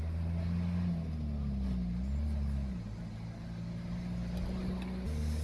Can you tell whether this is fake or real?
real